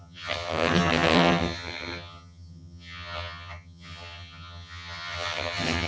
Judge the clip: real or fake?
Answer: fake